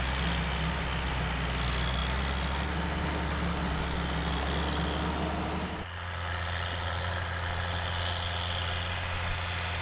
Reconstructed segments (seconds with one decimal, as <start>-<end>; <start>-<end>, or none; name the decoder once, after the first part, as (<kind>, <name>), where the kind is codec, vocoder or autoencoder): none